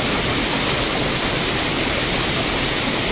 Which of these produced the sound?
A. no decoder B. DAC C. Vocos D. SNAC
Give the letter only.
A